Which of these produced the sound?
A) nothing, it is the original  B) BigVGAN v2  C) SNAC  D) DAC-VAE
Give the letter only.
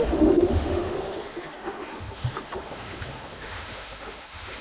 D